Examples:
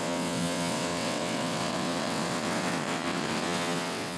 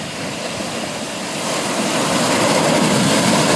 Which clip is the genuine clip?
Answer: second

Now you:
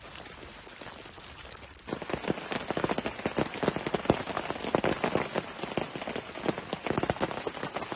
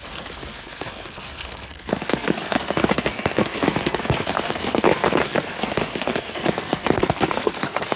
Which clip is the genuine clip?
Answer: first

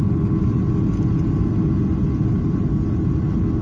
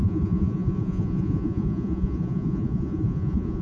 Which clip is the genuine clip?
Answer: first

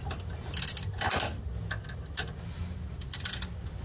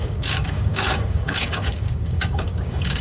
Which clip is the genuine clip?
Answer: first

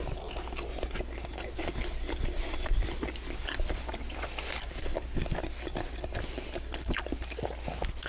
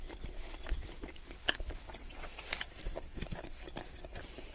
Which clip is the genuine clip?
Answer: first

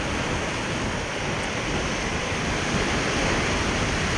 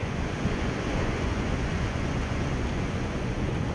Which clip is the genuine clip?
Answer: first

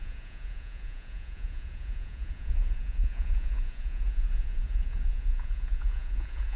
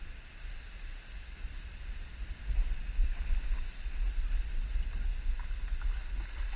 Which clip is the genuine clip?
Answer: second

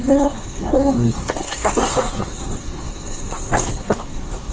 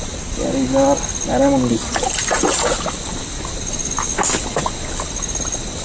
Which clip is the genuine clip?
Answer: second